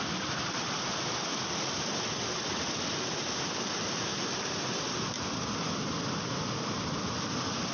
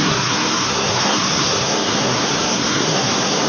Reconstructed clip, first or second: second